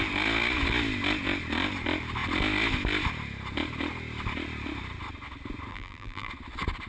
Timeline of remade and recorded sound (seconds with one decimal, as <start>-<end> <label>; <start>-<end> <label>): 0.0-5.7 recorded; 5.7-6.3 remade; 6.3-6.9 recorded